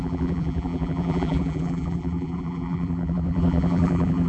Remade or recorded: remade